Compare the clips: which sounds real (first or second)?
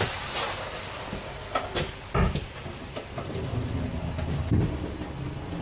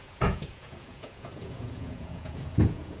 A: first